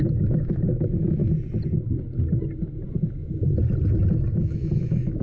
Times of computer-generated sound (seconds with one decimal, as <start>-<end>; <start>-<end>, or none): 0.0-1.2; 4.3-5.2